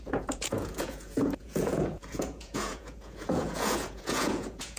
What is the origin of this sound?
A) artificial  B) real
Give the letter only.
A